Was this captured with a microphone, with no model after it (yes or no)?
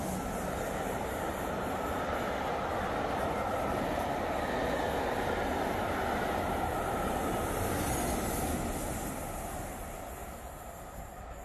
yes